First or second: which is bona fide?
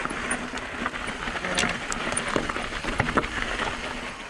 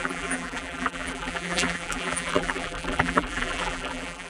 first